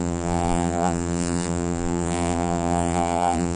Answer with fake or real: fake